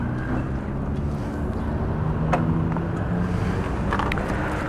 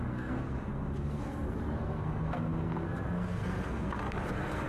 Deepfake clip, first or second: second